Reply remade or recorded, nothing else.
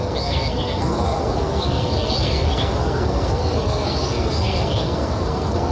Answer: remade